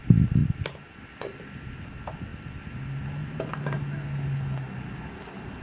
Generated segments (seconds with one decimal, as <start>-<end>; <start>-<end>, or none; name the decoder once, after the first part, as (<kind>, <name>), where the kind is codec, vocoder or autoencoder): none

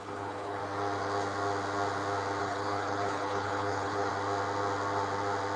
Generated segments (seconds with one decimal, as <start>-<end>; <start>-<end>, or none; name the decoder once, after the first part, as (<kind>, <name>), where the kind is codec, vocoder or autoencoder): 0.0-0.6 (codec, HILCodec); 2.4-4.1

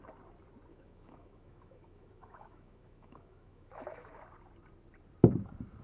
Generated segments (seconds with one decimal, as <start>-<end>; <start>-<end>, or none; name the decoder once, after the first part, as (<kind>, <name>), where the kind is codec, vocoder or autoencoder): 0.7-4.2 (autoencoder, DAC-VAE)

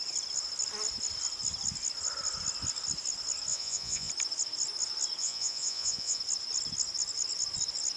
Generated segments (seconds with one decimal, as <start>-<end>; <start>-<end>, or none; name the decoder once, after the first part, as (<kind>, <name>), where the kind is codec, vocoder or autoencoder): 3.5-4.1 (vocoder, Vocos); 5.2-6.2

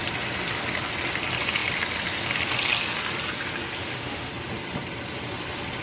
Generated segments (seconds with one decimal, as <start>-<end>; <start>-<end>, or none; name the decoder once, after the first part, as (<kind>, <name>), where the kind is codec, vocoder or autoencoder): 3.8-4.3 (autoencoder, DAC-VAE)

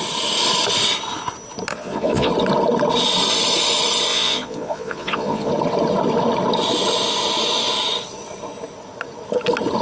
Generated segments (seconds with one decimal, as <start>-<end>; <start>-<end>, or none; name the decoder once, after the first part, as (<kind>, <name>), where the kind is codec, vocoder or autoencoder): 1.7-2.3 (vocoder, Vocos); 4.1-5.5

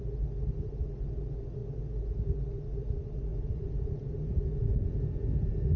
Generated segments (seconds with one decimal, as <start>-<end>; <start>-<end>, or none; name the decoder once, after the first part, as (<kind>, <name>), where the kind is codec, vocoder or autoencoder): 3.3-5.8 (vocoder, Vocos)

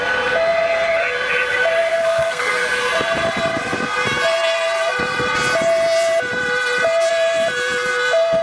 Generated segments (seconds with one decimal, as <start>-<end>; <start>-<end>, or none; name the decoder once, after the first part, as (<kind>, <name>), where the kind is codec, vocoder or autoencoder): 1.9-2.5 (codec, SNAC)